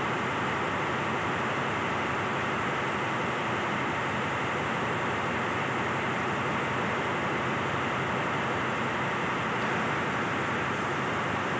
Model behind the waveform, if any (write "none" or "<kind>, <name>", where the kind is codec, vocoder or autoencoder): none